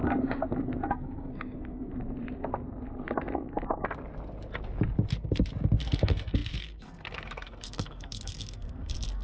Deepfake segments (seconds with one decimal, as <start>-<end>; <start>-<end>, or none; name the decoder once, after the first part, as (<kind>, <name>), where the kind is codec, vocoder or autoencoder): 0.9-1.9 (codec, SNAC); 5.8-9.2